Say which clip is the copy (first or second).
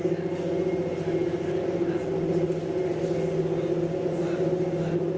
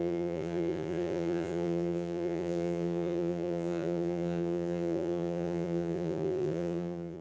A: second